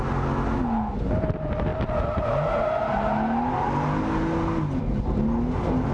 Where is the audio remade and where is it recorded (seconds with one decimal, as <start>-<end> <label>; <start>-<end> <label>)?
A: 0.0-5.9 recorded